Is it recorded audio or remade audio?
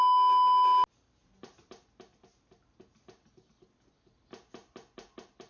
recorded